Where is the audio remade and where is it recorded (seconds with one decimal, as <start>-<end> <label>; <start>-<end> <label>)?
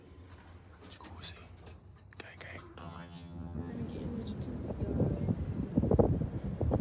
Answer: 0.0-2.8 recorded; 2.8-3.7 remade; 3.7-6.8 recorded